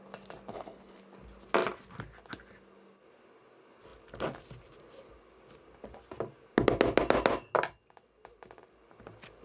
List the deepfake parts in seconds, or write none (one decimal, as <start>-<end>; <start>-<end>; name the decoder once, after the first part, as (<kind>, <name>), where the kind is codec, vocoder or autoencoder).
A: 0.5-1.0 (codec, HILCodec)